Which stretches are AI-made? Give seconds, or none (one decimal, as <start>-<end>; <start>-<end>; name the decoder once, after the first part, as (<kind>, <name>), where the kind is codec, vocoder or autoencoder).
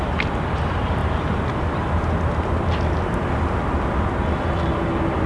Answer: none